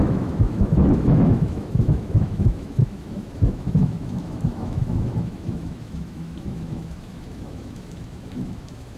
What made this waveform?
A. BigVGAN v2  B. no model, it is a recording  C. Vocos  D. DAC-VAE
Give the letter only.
D